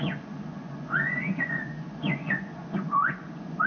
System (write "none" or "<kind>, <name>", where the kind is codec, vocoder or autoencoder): vocoder, Vocos